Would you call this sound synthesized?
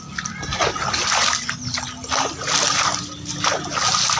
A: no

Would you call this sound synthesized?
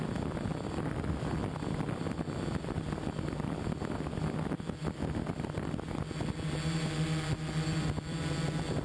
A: no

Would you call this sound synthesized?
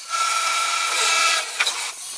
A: yes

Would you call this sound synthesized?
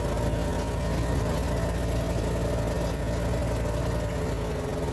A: no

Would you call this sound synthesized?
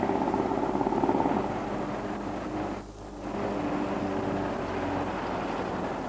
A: no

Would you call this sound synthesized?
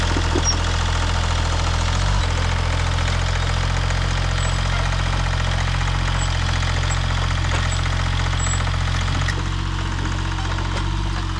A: no